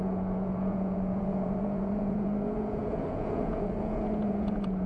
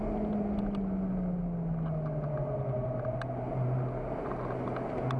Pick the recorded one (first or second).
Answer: second